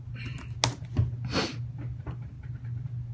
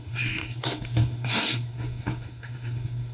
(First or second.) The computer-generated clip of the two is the second